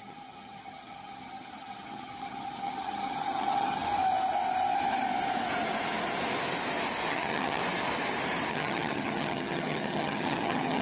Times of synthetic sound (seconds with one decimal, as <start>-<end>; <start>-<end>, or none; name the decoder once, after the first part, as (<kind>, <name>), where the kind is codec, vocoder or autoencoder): 0.0-3.8 (vocoder, HiFi-GAN); 7.1-7.6; 8.5-10.8